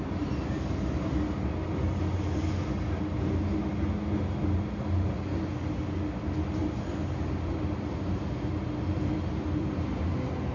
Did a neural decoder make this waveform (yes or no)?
no